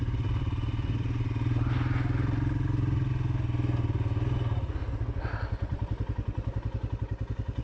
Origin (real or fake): real